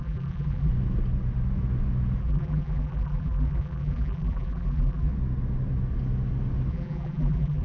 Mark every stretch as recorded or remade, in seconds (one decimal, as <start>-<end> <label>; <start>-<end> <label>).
0.0-0.7 remade; 0.7-2.2 recorded; 2.2-5.1 remade; 5.1-6.7 recorded; 6.7-7.6 remade